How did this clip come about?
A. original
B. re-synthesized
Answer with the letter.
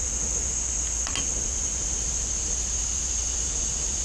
A